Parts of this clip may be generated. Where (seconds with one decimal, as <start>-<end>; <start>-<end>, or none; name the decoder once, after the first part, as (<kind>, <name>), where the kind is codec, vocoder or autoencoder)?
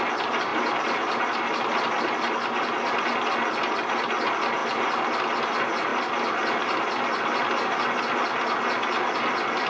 0.5-2.3 (vocoder, BigVGAN v2)